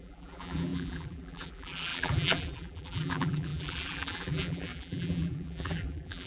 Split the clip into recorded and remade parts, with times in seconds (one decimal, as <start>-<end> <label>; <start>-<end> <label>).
0.0-6.3 remade